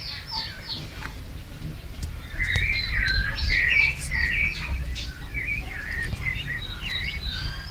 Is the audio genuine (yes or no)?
yes